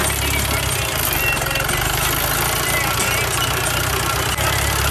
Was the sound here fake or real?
real